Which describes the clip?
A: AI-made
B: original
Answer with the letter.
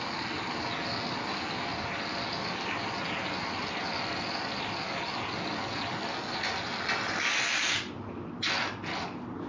B